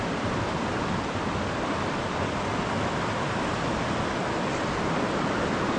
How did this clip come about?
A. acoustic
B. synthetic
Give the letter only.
A